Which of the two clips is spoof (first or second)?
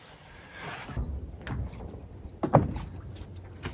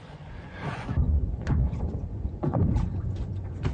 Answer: second